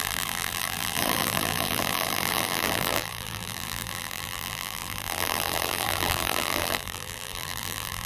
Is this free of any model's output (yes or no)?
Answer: no